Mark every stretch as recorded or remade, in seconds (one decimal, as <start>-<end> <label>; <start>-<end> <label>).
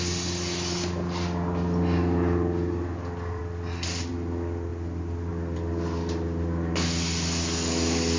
0.0-8.2 recorded